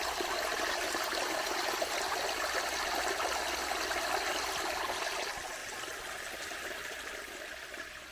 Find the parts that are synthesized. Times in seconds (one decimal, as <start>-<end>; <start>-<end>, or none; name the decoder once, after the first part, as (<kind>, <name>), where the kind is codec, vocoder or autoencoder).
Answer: none